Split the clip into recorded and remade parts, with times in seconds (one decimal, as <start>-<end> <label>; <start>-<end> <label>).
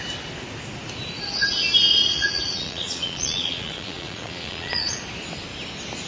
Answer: 0.0-1.9 recorded; 1.9-5.0 remade; 5.0-6.1 recorded